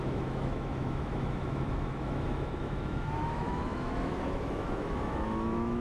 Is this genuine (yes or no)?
no